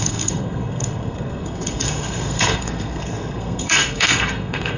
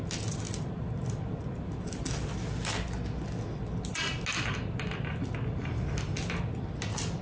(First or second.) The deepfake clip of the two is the first